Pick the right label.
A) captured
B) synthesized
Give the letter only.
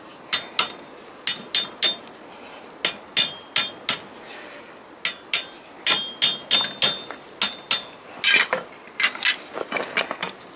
A